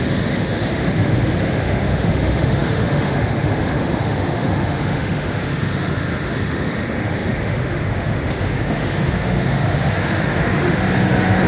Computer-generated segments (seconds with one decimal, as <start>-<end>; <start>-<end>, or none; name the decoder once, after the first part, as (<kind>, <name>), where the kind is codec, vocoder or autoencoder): 0.0-11.5 (autoencoder, DAC-VAE)